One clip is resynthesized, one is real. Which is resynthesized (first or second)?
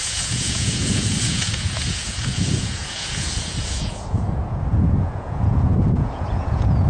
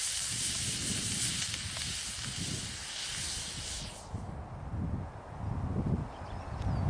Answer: first